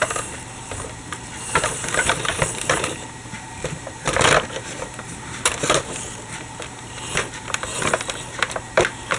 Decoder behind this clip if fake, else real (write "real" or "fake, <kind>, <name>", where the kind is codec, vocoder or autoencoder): fake, vocoder, BigVGAN v2